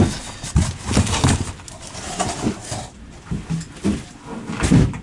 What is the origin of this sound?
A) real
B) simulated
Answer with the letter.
A